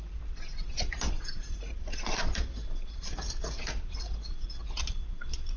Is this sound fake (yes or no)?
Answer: yes